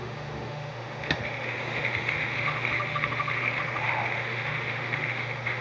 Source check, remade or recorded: remade